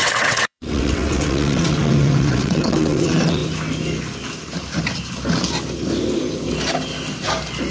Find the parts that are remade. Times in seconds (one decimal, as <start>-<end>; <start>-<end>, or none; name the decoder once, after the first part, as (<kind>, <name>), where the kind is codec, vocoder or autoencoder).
0.0-3.4 (vocoder, WaveNeXt)

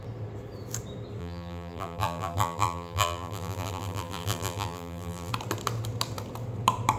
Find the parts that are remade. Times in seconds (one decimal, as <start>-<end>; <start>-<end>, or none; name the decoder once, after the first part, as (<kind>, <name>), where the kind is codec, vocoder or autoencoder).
1.2-5.3 (vocoder, BigVGAN v2)

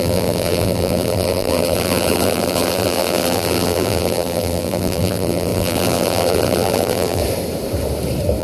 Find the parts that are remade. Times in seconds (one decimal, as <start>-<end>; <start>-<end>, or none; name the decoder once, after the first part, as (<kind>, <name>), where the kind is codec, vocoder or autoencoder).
0.0-7.2 (vocoder, BigVGAN v2)

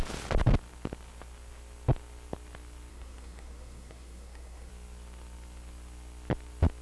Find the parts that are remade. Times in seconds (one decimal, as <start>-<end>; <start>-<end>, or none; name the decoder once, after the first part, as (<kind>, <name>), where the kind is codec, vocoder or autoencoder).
2.9-4.7 (codec, SNAC)